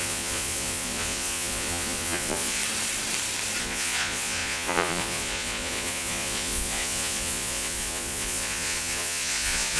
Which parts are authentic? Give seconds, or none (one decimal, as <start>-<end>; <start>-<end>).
2.6-3.6